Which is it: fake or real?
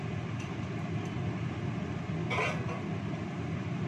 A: real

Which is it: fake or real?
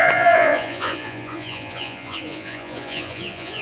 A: fake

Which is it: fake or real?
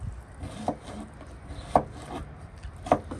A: real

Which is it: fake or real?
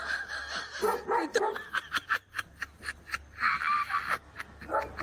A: real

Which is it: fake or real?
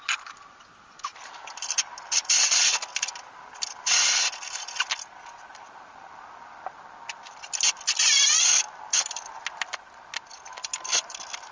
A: real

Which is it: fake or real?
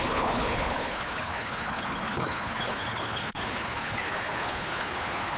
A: fake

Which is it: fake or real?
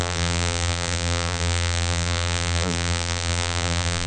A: fake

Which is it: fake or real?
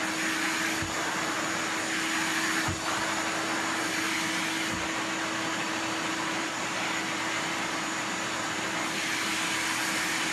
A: real